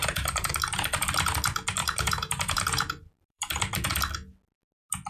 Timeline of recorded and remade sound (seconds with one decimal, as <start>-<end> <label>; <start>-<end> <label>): 0.0-0.5 remade; 0.5-1.8 recorded; 1.8-3.6 remade; 3.6-5.1 recorded